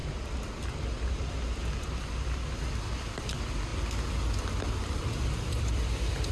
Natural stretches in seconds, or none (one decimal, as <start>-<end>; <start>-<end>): 0.0-3.2; 3.7-4.4